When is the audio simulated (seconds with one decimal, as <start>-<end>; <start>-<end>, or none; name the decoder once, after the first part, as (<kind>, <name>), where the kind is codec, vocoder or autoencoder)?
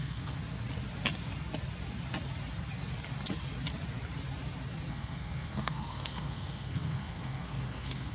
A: 0.0-0.4 (codec, SNAC); 4.9-8.1